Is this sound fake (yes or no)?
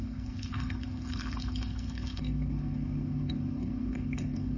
yes